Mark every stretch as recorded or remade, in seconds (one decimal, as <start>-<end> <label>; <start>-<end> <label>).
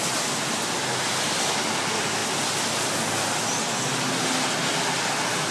0.0-5.5 recorded